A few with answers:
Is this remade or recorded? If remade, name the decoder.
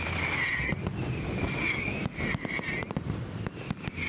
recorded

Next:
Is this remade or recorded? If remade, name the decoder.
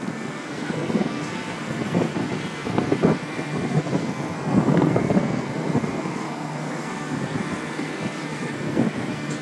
remade, codec, SNAC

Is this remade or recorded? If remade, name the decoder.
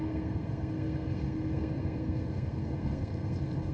remade, codec, SNAC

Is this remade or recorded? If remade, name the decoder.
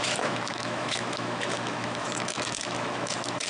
remade, autoencoder, DAC-VAE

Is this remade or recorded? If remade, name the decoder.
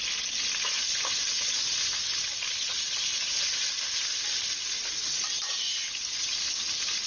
recorded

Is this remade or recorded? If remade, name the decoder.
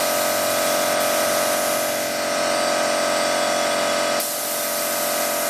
recorded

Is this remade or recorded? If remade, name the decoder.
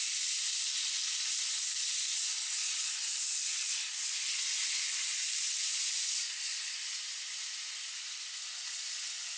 recorded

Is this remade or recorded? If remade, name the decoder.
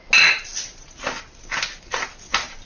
recorded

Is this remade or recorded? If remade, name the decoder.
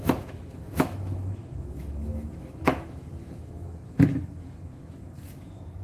remade, autoencoder, DAC-VAE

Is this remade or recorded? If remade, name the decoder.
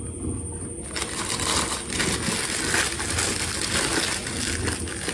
recorded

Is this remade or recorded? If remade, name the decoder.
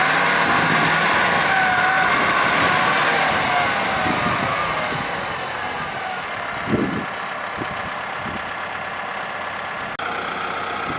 recorded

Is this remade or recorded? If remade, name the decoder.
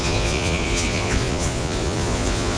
remade, vocoder, Vocos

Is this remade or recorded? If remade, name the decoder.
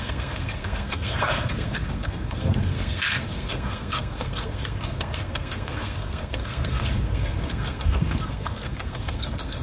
remade, codec, SNAC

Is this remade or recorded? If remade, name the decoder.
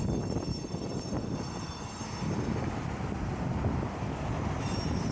remade, vocoder, BigVGAN v2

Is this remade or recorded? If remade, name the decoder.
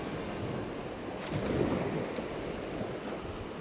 recorded